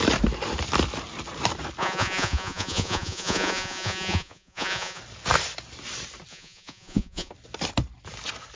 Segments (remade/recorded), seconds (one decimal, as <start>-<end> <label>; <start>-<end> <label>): 0.0-1.8 recorded; 1.8-5.0 remade; 5.0-6.3 recorded; 6.3-7.3 remade; 7.3-8.6 recorded